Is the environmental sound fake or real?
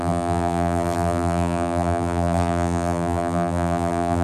fake